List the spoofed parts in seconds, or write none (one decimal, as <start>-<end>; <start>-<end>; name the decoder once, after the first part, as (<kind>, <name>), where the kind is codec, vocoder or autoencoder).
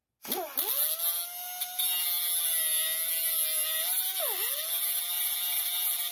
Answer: none